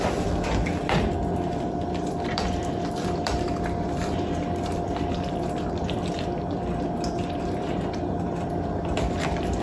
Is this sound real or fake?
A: fake